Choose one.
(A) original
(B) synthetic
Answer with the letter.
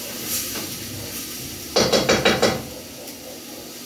A